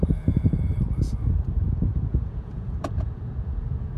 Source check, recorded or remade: remade